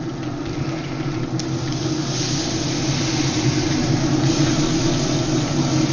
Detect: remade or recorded recorded